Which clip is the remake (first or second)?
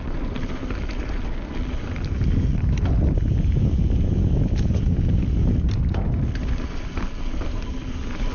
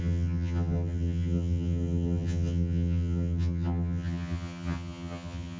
second